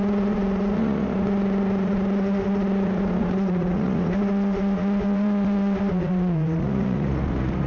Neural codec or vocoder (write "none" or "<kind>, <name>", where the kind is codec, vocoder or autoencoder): vocoder, Vocos